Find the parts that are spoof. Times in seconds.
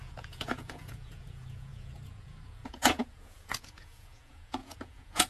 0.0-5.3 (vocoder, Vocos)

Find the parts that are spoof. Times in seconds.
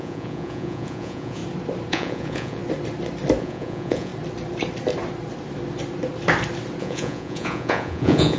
0.0-1.4 (vocoder, Vocos); 1.9-2.6; 3.4-4.1; 6.8-8.4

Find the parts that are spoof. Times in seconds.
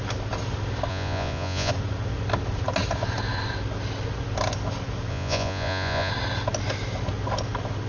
0.9-1.7 (vocoder, Vocos); 5.1-6.1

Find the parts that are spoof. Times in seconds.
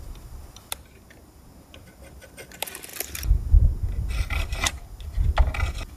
none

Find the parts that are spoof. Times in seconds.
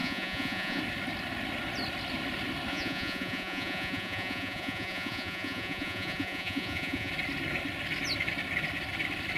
0.0-0.8 (vocoder, Vocos); 2.7-7.1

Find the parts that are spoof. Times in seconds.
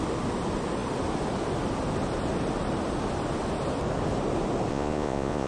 4.7-5.5 (vocoder, Vocos)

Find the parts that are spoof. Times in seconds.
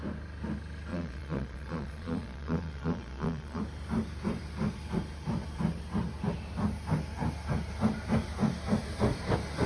0.9-3.6 (vocoder, Vocos)